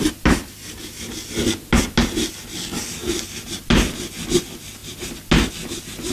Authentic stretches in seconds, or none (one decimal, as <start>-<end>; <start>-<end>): 0.0-6.1

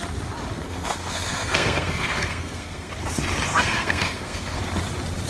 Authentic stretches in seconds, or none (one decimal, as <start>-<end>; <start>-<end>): 0.0-0.5; 2.9-3.5; 4.6-5.3

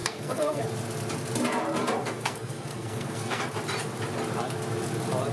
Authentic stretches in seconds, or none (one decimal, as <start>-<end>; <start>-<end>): 0.6-2.0; 3.4-5.3

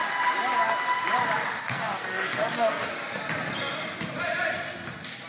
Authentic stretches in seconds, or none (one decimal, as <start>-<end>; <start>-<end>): 0.0-1.6; 2.9-5.3

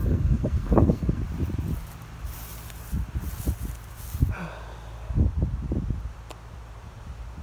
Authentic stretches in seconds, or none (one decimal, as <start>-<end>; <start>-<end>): 1.2-7.4